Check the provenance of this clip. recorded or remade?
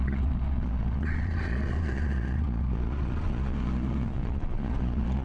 remade